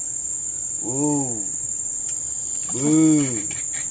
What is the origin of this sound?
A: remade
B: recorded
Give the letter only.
B